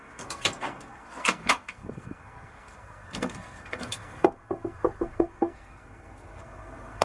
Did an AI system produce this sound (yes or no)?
yes